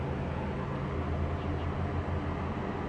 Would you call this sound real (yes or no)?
yes